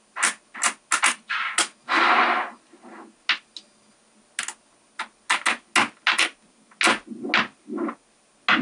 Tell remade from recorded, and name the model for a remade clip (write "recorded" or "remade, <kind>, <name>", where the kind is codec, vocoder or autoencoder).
recorded